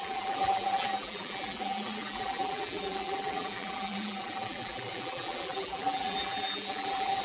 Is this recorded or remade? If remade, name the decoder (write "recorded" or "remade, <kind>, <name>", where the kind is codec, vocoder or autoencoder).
remade, vocoder, BigVGAN v2